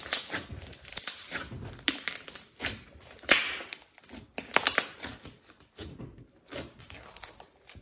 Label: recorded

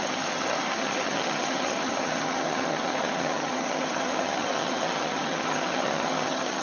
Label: remade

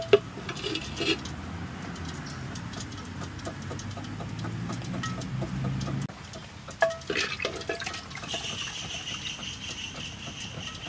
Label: recorded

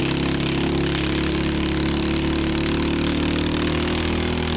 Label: recorded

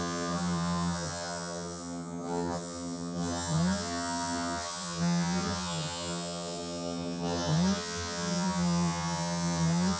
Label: remade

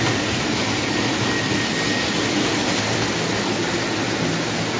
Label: recorded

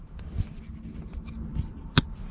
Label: recorded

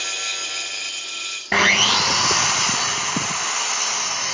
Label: recorded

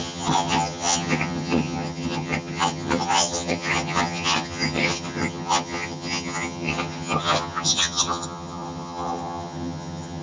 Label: remade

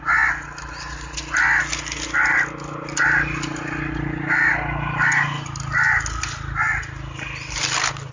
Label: recorded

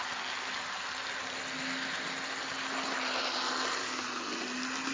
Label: recorded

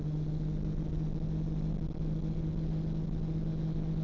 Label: recorded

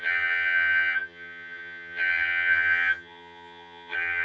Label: remade